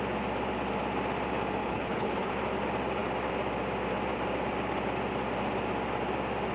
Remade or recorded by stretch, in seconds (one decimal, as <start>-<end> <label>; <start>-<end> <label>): 0.0-1.6 recorded; 1.6-2.3 remade; 2.3-6.5 recorded